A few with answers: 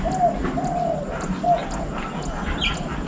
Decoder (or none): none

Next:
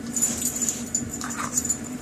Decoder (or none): vocoder, BigVGAN v2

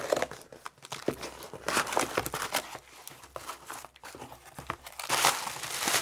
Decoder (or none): none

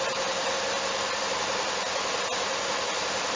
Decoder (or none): vocoder, BigVGAN v2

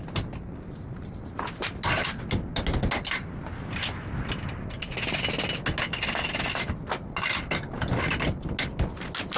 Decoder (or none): none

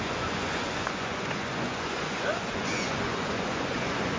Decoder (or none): vocoder, Vocos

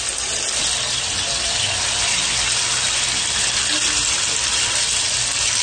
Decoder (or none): none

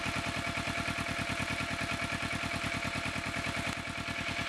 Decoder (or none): none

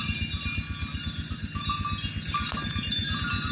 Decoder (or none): none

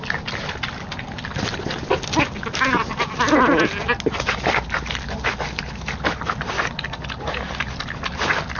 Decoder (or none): none